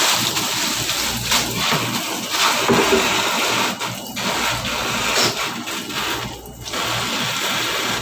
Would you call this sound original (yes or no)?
yes